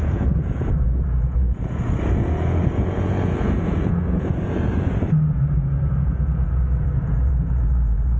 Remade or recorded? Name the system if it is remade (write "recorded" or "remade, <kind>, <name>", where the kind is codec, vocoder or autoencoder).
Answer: remade, vocoder, Vocos